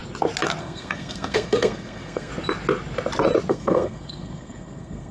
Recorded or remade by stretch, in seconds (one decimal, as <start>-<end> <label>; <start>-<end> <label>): 0.0-0.6 recorded; 0.6-2.3 remade; 2.3-3.5 recorded; 3.5-5.1 remade